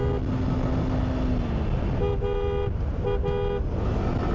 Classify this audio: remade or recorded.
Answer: recorded